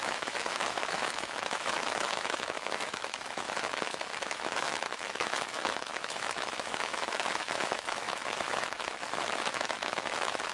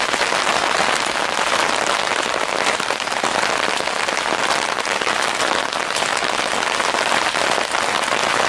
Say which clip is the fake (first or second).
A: first